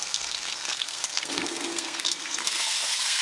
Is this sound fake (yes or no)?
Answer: yes